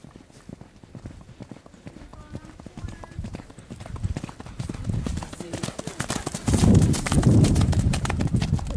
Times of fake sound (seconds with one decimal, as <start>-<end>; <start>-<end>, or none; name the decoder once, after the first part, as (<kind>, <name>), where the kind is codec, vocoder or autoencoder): 2.1-4.2 (vocoder, BigVGAN v2); 5.1-5.6; 6.3-8.2